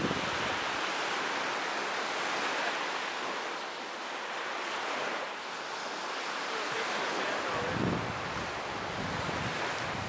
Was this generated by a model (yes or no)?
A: no